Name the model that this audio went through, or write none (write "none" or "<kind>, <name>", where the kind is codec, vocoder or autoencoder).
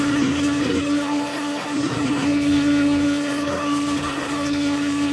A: codec, SNAC